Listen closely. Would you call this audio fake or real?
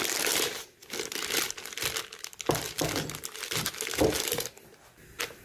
real